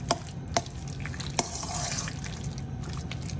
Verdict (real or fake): real